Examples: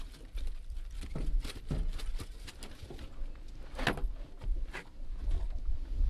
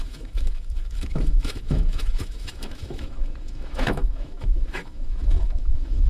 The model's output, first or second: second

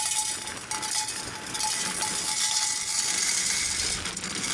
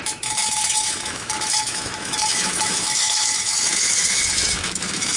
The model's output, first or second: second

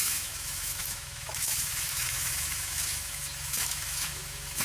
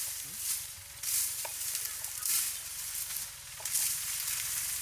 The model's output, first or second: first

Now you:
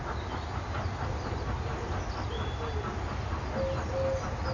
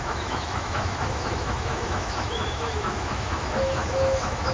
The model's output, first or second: second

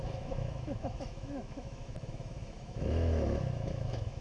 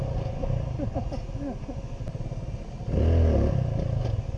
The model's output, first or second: first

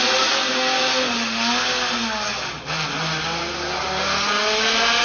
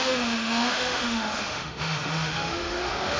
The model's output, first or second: second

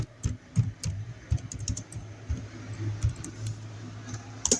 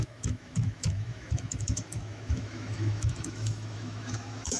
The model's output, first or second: second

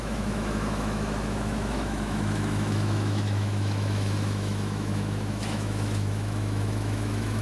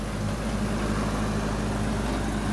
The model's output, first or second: first